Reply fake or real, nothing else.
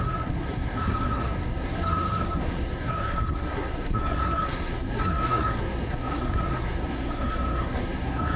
fake